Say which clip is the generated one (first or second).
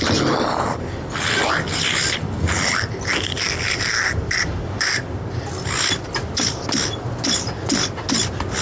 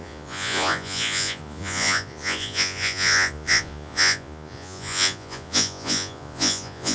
second